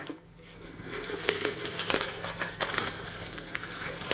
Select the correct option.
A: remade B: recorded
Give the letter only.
A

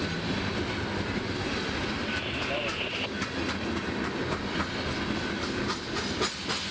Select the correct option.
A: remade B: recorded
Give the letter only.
B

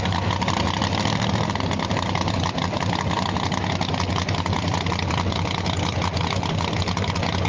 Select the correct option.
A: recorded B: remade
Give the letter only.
A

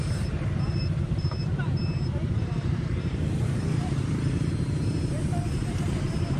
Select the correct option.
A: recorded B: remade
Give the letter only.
B